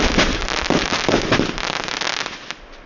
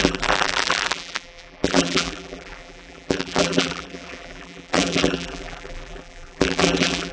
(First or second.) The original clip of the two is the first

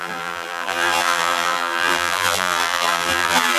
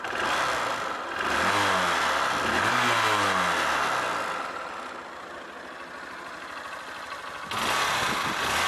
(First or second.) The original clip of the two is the second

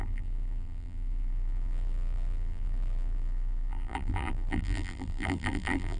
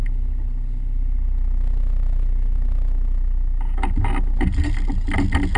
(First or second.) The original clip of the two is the second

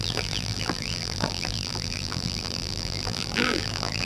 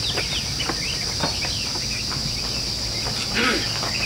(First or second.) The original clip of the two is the second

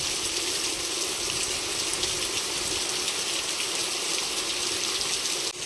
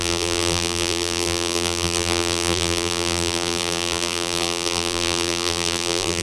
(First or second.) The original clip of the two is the first